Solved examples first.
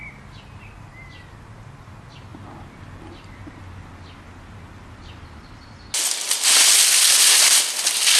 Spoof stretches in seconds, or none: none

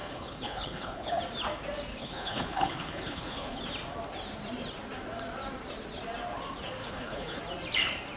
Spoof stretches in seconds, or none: 0.0-1.2 (codec, HILCodec); 1.9-3.6; 6.8-7.4